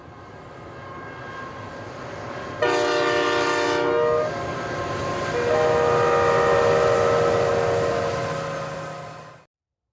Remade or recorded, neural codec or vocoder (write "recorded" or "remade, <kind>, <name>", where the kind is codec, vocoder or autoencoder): recorded